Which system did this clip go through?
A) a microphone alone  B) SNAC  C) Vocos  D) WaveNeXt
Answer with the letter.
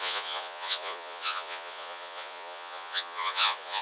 C